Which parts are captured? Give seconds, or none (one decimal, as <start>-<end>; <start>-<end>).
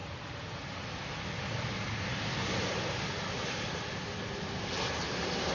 0.0-5.5